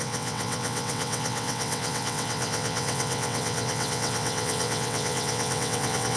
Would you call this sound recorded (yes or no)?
no